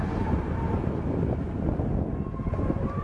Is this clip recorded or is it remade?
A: recorded